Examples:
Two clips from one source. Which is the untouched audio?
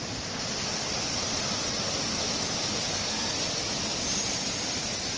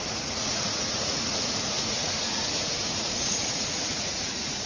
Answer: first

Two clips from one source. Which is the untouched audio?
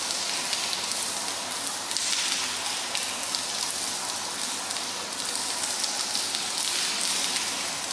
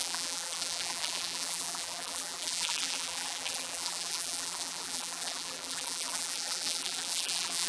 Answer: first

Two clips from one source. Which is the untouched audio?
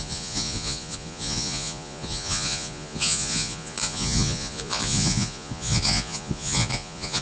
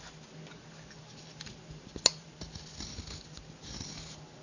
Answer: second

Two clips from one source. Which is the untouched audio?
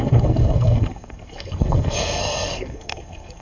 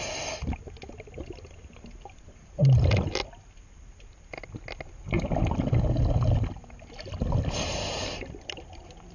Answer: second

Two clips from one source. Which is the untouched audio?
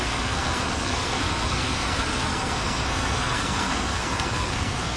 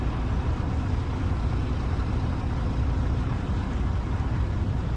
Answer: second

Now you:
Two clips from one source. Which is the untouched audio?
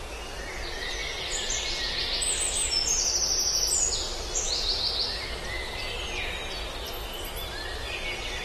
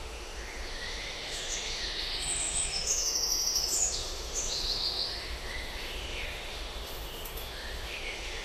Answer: first